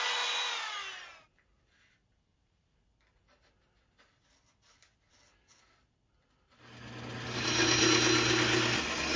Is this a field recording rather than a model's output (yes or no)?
yes